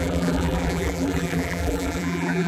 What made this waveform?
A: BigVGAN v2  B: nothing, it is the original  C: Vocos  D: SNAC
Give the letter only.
A